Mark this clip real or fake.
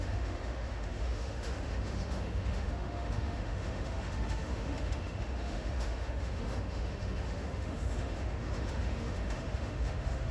fake